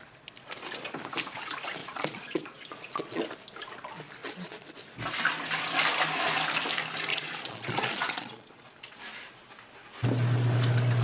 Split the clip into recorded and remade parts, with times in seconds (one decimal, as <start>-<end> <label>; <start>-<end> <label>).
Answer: 0.0-1.8 recorded; 1.8-3.2 remade; 3.2-4.2 recorded; 4.2-4.8 remade; 4.8-7.1 recorded; 7.1-9.0 remade; 9.0-11.0 recorded